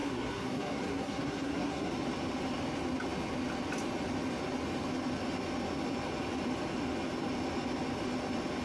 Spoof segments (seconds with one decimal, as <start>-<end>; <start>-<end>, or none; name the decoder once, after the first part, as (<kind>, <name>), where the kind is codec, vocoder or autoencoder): 0.0-1.9 (codec, SNAC)